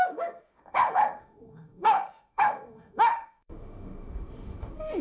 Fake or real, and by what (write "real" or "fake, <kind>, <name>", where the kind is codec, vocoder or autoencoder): fake, autoencoder, DAC-VAE